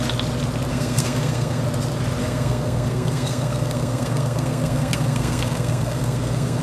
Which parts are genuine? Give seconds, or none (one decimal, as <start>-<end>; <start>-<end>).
0.0-0.7; 1.6-2.2